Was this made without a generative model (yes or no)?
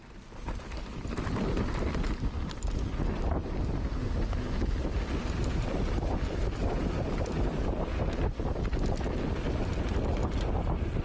yes